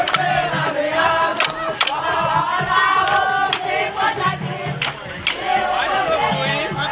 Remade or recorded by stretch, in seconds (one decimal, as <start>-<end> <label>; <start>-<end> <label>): 0.0-6.9 recorded